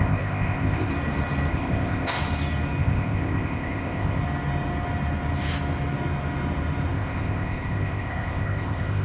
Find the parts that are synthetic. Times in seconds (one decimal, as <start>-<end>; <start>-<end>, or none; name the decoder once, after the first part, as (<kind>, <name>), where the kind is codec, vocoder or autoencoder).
0.0-0.9 (codec, ZipCodec); 1.5-2.2; 2.8-4.2; 6.9-9.0